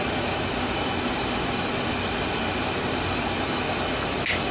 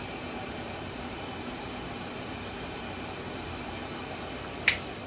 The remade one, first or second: second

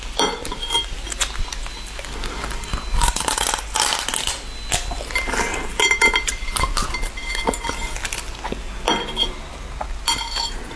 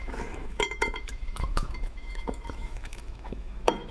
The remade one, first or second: second